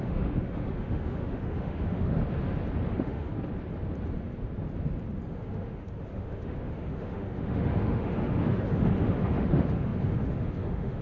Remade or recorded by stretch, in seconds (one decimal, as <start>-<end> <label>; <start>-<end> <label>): 0.0-2.2 remade; 2.2-2.9 recorded; 2.9-3.3 remade; 3.3-5.3 recorded; 5.3-11.0 remade